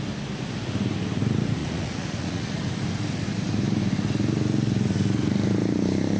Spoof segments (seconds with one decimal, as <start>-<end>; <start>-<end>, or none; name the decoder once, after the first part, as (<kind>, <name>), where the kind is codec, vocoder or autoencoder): 1.6-2.6 (vocoder, Vocos)